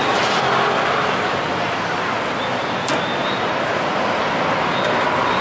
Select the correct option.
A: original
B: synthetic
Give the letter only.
A